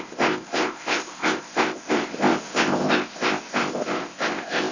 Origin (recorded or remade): remade